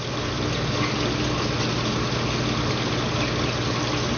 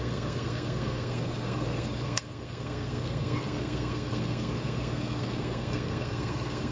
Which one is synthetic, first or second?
second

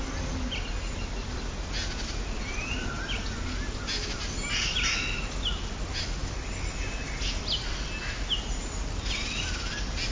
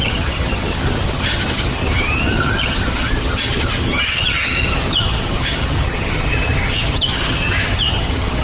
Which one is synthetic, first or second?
second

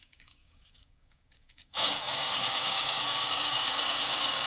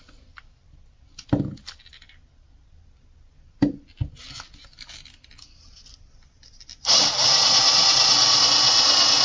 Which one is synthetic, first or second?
first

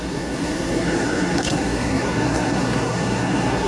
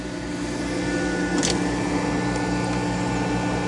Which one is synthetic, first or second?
first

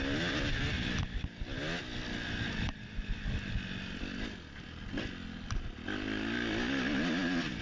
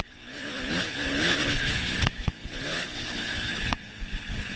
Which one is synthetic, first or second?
second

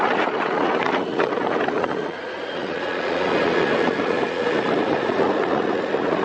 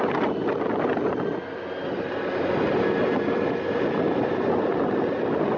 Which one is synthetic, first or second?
first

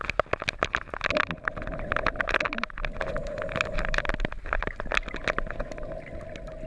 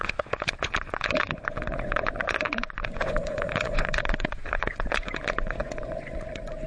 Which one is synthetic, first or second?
second